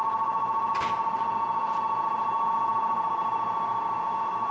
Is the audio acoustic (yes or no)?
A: no